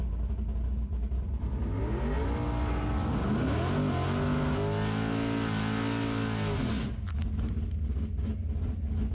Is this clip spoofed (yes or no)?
no